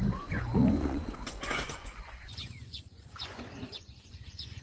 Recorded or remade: remade